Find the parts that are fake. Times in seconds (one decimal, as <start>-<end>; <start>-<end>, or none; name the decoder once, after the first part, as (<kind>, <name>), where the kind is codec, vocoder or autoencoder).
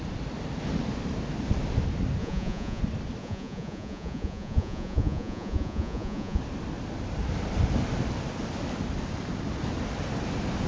2.2-2.8 (vocoder, Vocos); 3.2-6.4